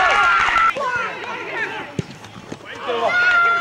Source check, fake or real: real